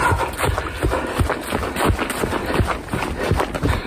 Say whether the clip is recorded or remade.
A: recorded